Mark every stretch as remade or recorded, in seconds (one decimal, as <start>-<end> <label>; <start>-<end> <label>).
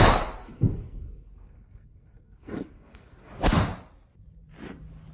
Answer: 0.0-0.4 recorded; 0.4-3.3 remade; 3.3-5.1 recorded